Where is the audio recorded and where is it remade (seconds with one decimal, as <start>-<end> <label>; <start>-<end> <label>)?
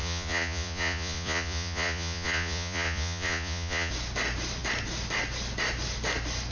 0.0-3.9 remade; 3.9-6.5 recorded